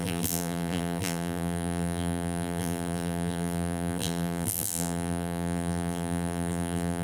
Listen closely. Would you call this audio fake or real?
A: fake